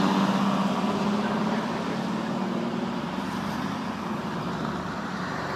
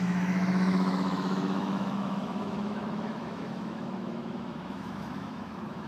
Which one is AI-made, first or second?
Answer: second